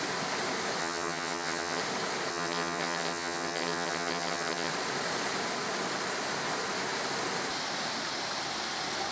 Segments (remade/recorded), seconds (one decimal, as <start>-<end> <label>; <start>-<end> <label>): 0.0-0.8 recorded; 0.8-1.8 remade; 1.8-2.3 recorded; 2.3-4.7 remade; 4.7-9.1 recorded